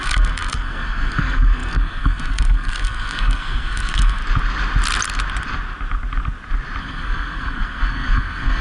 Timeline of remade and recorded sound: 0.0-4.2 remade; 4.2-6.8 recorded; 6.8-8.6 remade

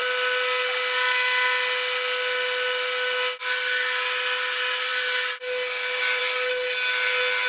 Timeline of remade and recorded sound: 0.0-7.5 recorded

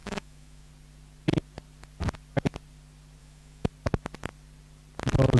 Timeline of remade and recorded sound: 0.0-0.7 remade; 0.7-3.2 recorded; 3.2-3.7 remade; 3.7-5.4 recorded

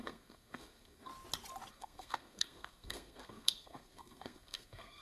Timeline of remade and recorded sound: 0.0-1.1 remade; 1.1-1.7 recorded; 1.7-5.0 remade

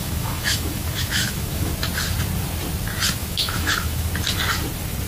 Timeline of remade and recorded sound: 0.0-1.7 remade; 1.7-3.2 recorded; 3.2-4.1 remade; 4.1-5.1 recorded

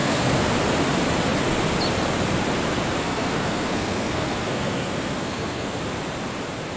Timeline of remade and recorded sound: 0.0-0.5 remade; 0.5-3.0 recorded; 3.0-5.8 remade; 5.8-6.8 recorded

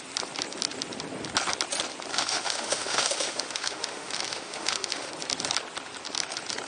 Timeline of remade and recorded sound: 0.0-2.1 recorded; 2.1-5.1 remade; 5.1-6.7 recorded

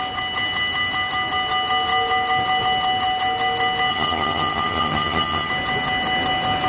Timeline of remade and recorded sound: 0.0-3.9 recorded; 3.9-5.5 remade; 5.5-6.7 recorded